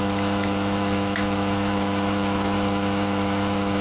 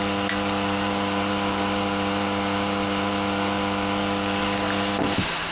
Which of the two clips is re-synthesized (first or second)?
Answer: first